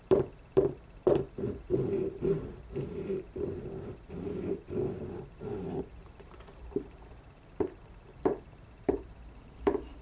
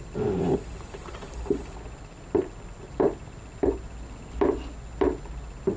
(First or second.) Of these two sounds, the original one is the second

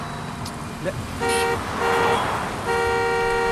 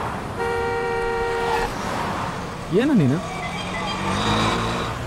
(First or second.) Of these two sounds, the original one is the first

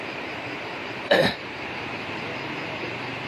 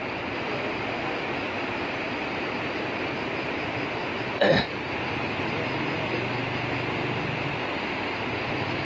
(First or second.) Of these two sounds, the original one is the second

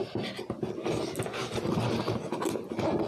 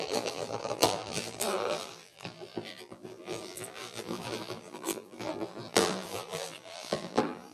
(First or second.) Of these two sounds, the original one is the first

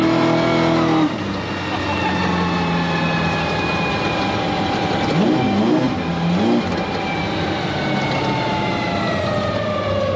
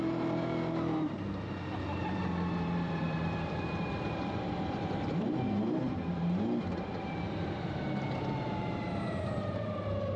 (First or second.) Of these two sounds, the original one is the first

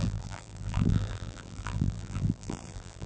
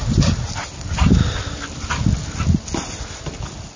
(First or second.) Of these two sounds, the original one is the second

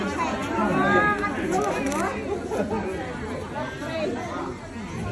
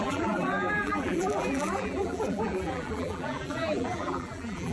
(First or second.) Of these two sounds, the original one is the first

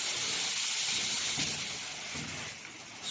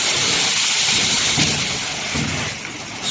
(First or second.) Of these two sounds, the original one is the first